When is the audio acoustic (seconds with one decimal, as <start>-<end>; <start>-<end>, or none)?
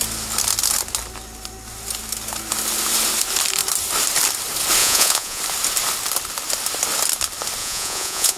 0.0-4.8; 5.4-7.6